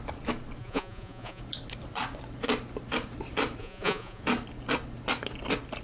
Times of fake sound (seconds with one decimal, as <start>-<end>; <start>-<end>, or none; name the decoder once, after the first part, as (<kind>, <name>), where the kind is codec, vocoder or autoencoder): 0.6-1.4 (vocoder, Vocos); 3.6-4.2